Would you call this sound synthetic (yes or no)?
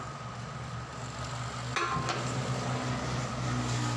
no